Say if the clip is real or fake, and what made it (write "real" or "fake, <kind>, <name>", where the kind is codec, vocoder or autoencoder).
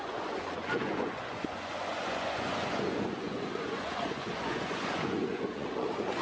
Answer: fake, vocoder, Vocos